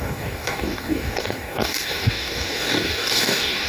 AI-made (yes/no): yes